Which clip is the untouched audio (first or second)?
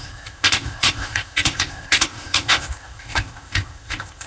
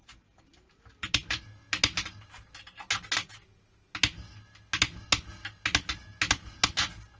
second